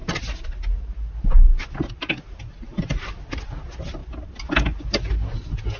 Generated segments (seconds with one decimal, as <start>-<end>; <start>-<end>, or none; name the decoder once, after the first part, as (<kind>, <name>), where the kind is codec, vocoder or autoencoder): none